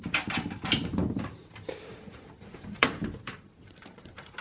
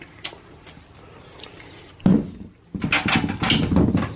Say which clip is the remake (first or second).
first